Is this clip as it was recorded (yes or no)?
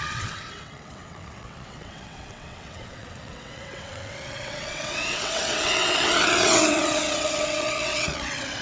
no